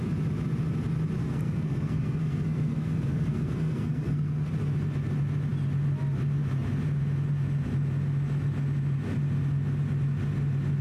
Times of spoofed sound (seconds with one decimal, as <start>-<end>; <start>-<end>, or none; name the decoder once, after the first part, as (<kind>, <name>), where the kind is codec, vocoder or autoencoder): 1.2-4.5 (codec, SNAC)